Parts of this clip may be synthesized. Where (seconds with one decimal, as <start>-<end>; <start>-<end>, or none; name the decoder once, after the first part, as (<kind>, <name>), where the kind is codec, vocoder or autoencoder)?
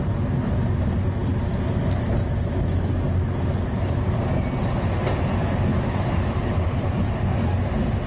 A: 5.7-6.8 (vocoder, BigVGAN v2)